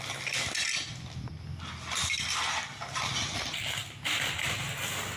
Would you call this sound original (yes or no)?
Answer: yes